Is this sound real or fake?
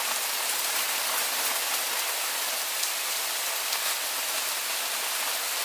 real